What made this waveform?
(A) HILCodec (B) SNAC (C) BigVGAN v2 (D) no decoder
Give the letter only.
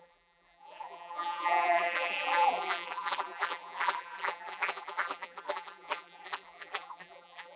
C